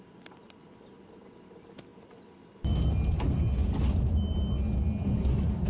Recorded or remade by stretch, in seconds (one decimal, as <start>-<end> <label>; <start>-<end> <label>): 0.0-5.7 recorded